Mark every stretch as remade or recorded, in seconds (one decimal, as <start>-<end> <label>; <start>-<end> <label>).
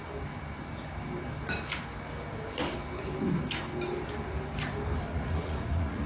0.0-5.1 recorded; 5.1-6.1 remade